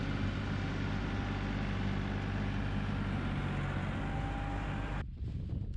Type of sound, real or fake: real